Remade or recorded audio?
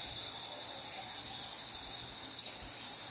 recorded